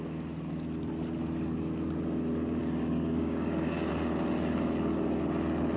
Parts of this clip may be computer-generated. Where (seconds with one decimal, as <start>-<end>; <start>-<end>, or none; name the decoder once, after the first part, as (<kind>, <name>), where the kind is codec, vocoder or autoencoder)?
2.6-3.9 (codec, DAC)